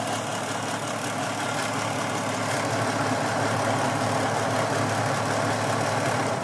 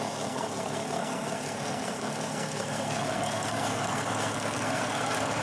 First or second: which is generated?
second